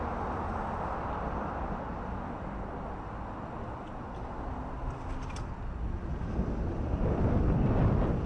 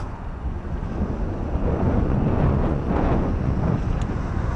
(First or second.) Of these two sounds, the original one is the first